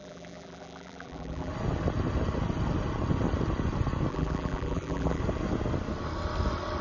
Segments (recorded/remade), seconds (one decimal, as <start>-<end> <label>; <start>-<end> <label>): 0.0-1.5 remade; 1.5-4.1 recorded; 4.1-5.2 remade; 5.2-6.8 recorded

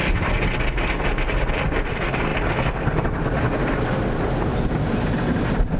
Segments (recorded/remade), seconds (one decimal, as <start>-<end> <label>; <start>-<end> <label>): 0.0-1.0 recorded; 1.0-5.8 remade